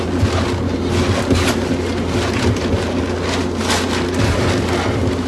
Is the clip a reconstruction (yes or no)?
no